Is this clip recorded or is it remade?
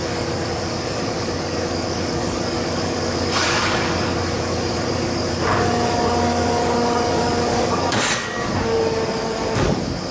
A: remade